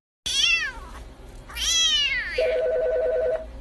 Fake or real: real